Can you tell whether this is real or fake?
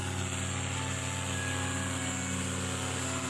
real